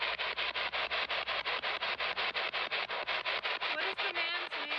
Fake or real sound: real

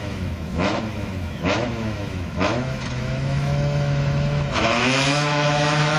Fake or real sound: fake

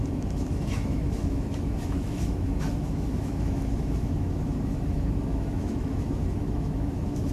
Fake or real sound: fake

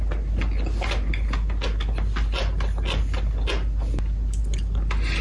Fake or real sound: real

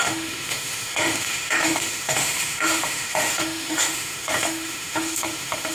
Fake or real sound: fake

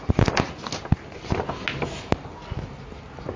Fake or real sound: real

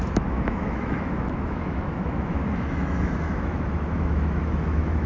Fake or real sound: fake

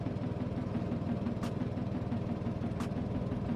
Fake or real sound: real